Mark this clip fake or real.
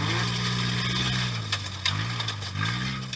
real